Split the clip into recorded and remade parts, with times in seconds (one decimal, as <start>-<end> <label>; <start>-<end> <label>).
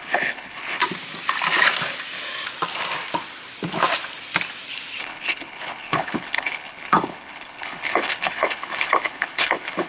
0.0-0.8 remade; 0.8-5.0 recorded; 5.0-9.9 remade